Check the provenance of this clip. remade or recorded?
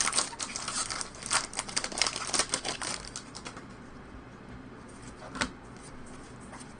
recorded